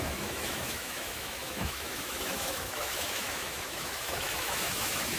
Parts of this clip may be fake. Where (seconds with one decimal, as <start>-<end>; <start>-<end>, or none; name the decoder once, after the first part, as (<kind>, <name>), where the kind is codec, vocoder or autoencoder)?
0.0-5.2 (autoencoder, DAC-VAE)